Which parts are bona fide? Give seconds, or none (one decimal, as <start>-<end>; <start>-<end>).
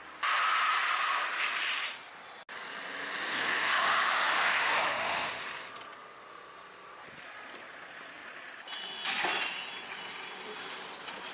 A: 0.0-3.3; 5.3-11.3